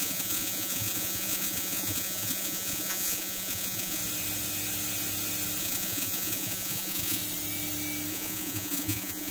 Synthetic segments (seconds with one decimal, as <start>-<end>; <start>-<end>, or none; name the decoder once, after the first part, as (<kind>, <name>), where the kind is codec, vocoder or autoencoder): 0.0-4.0 (vocoder, Vocos); 5.6-7.2; 8.1-9.3